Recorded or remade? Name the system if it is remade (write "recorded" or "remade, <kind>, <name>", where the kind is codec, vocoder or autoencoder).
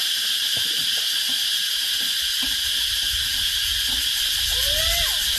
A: recorded